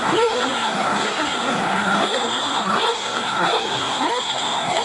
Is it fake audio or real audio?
fake